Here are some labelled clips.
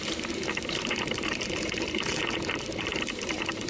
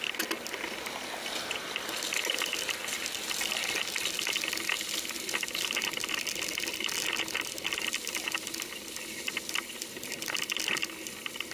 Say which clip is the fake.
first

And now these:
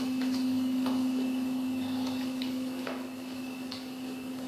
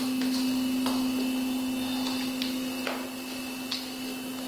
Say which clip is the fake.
first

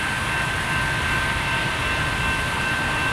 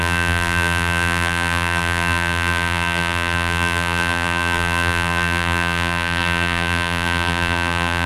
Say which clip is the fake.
second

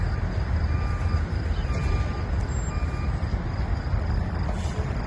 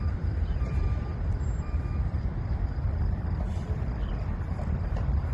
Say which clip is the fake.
second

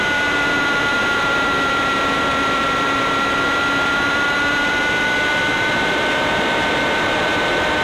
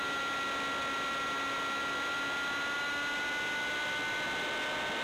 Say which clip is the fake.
first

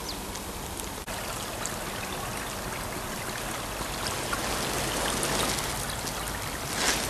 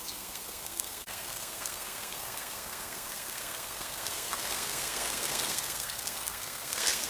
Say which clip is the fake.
second